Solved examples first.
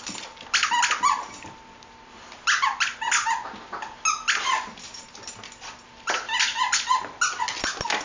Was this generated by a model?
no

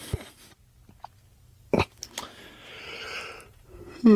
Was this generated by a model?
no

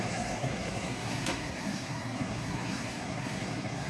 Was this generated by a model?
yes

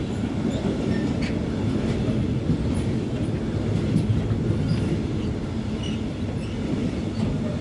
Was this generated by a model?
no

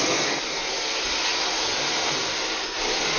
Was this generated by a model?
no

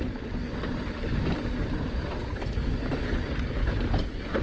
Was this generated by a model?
no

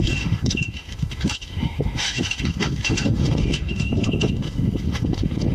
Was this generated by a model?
yes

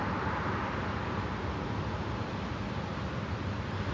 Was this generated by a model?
no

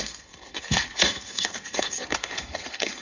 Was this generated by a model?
yes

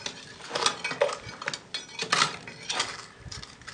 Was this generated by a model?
no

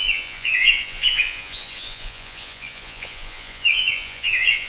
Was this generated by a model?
yes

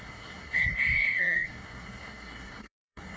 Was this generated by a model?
yes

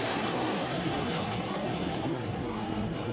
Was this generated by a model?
yes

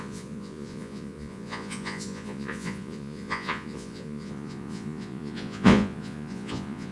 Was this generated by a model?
yes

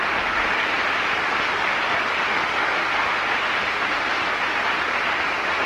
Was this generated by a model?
no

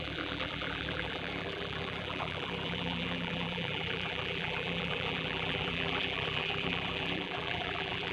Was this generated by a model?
yes